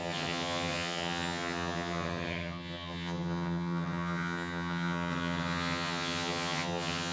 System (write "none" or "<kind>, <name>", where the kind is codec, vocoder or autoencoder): vocoder, HiFi-GAN